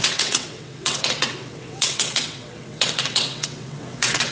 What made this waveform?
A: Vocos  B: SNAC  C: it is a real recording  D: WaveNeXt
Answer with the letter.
D